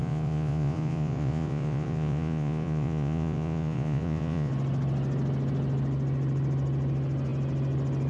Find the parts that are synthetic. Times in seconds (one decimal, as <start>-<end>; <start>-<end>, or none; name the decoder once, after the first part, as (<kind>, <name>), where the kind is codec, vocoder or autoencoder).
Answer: 0.0-4.5 (vocoder, Vocos)